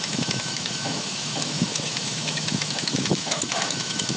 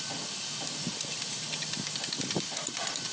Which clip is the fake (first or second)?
first